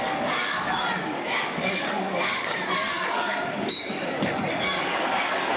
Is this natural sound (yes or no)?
no